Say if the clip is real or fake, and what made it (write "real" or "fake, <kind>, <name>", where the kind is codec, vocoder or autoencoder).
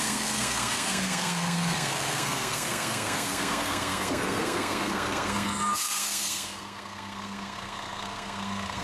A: fake, codec, SNAC